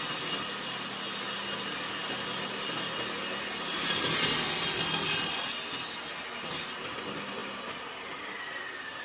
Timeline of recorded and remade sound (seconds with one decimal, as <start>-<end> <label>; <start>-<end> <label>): 0.0-9.0 recorded

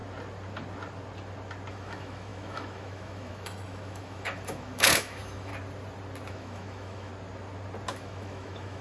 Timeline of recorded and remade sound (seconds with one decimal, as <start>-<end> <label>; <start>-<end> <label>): 0.0-1.7 recorded; 1.7-5.5 remade; 5.5-6.3 recorded; 6.3-7.1 remade; 7.1-7.9 recorded; 7.9-8.8 remade

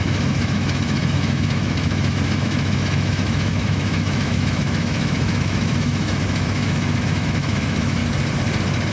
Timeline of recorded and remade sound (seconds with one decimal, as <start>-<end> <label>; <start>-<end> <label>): 0.0-8.0 remade; 8.0-8.9 recorded